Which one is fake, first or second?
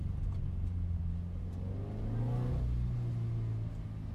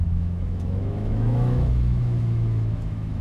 second